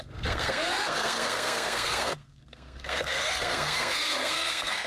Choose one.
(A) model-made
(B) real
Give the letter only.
A